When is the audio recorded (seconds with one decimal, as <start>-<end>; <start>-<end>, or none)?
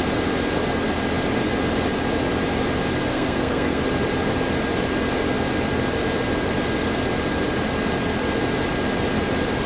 0.0-3.1; 3.8-9.7